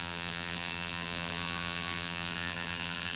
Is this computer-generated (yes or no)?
yes